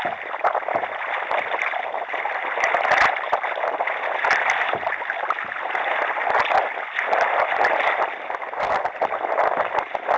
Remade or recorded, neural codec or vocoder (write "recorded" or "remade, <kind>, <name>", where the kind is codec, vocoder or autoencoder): recorded